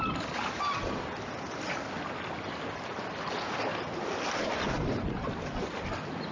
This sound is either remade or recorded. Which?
recorded